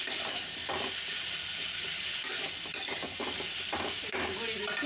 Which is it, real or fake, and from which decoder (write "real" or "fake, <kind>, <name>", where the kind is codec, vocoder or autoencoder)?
fake, vocoder, BigVGAN v2